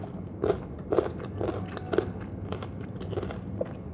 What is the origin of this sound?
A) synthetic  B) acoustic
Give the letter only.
B